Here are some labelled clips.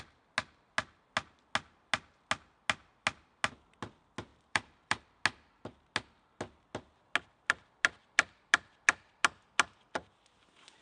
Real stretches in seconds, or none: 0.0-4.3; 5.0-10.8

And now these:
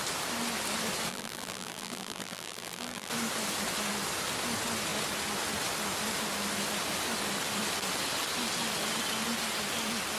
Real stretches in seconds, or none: 0.0-1.1; 3.1-10.2

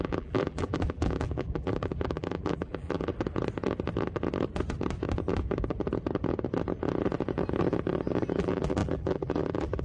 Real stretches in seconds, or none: 3.1-8.3

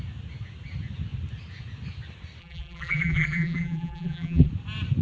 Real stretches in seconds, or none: 0.0-2.4; 4.5-5.0

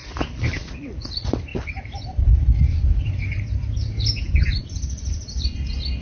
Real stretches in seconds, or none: 0.0-0.6

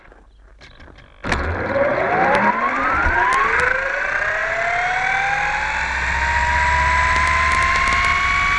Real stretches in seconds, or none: 0.0-0.5; 1.3-8.6

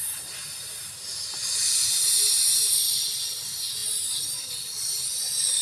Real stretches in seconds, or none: 0.0-5.6

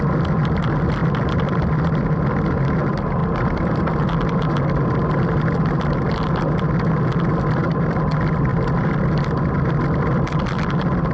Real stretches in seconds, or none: 0.0-1.0; 1.7-8.5; 9.1-11.1